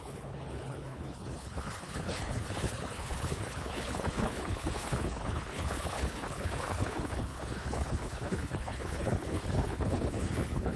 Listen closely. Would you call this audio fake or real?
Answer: fake